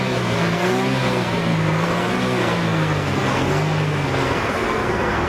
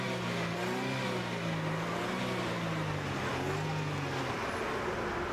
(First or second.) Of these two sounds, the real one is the second